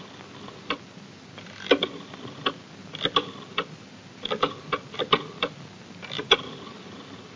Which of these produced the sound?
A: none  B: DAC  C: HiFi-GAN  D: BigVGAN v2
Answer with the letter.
A